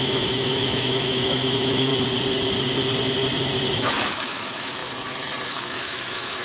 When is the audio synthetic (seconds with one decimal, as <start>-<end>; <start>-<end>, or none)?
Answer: 0.0-1.9; 3.7-4.8; 5.5-6.4